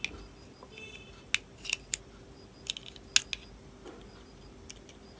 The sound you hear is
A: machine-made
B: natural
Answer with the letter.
B